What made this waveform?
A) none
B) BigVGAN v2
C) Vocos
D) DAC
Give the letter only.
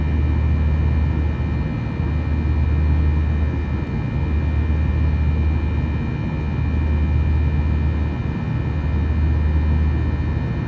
A